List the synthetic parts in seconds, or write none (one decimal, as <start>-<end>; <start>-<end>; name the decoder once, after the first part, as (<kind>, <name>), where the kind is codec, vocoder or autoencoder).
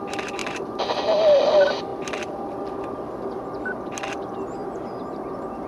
none